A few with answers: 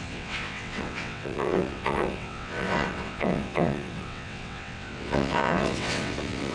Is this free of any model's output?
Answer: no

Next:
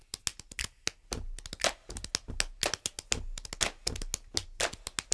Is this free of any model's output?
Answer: yes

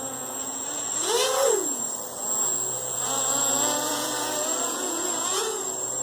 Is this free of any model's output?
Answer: no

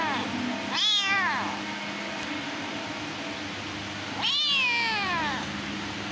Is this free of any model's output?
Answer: yes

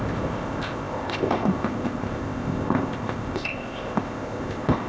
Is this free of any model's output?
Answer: no